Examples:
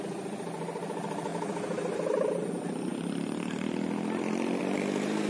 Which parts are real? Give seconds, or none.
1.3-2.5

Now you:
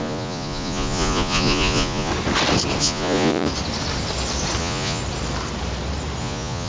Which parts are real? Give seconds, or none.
2.1-2.8; 3.5-4.6; 5.0-6.2

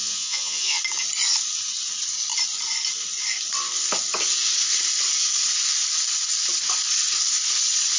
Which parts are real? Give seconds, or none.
0.8-8.0

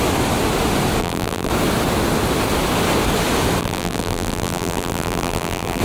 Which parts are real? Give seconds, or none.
0.0-1.0; 1.5-3.6

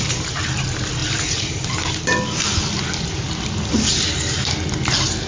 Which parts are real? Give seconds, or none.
none

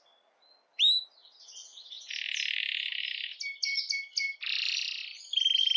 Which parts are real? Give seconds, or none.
0.0-5.8

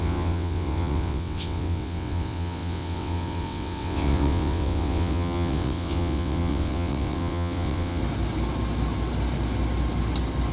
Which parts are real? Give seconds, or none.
8.0-10.5

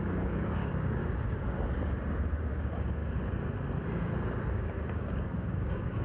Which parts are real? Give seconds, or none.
1.0-2.5; 3.0-4.5